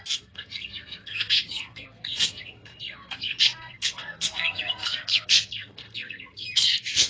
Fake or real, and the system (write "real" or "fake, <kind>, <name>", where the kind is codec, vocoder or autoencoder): fake, codec, SNAC